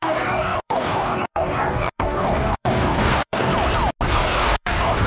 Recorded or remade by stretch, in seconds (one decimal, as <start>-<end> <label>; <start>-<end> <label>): 0.0-3.5 remade; 3.5-4.1 recorded; 4.1-5.1 remade